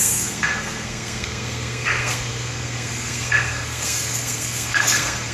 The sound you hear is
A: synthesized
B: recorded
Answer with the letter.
A